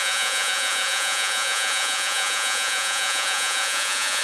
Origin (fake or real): fake